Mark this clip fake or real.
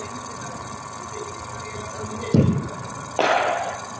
real